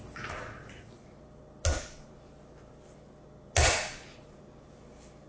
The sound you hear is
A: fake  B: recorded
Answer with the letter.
B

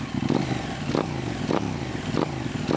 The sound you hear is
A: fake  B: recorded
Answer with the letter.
B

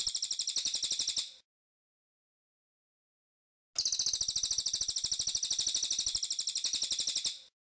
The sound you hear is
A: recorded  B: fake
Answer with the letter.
A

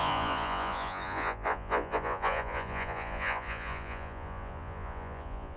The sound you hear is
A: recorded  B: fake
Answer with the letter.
B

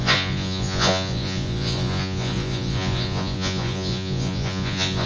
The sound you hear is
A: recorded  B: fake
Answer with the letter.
B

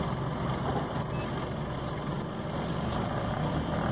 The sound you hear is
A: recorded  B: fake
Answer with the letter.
A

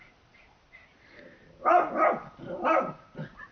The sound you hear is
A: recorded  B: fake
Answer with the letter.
A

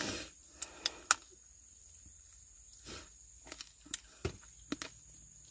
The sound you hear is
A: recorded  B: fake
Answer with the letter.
A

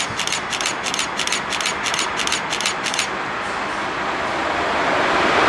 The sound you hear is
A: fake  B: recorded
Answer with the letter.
B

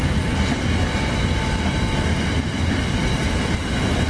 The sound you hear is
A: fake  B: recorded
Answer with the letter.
B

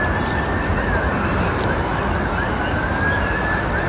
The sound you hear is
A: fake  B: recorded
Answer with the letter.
B